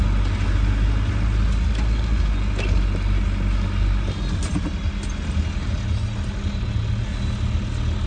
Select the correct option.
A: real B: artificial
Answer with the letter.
A